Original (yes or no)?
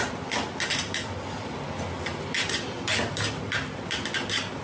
yes